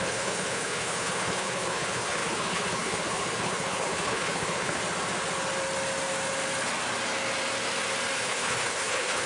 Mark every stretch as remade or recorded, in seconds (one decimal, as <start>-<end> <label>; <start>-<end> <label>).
0.0-4.8 remade; 4.8-8.2 recorded; 8.2-9.3 remade